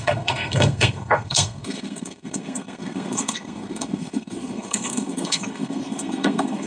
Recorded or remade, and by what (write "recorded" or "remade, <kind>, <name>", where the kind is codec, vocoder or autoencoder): remade, codec, SNAC